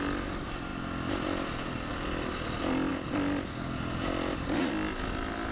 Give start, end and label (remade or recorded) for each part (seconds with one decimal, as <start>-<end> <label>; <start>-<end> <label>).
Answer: 0.0-5.5 recorded